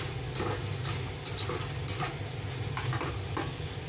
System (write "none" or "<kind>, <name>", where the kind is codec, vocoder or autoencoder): none